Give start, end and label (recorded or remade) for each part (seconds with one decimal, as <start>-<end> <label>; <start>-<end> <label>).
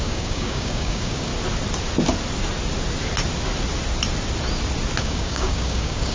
0.0-1.3 remade; 1.3-5.0 recorded; 5.0-6.1 remade